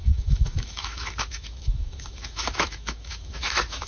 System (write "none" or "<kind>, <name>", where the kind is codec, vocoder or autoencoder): autoencoder, DAC-VAE